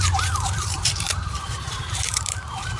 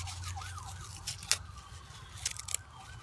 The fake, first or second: first